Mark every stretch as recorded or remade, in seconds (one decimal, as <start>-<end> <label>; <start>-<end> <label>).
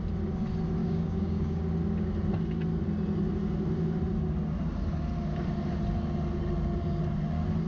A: 0.0-0.8 recorded; 0.8-1.6 remade; 1.6-7.7 recorded